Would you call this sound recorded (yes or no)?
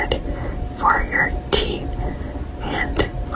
yes